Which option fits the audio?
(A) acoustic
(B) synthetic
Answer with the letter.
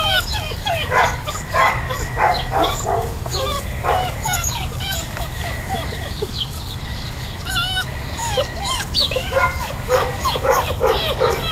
B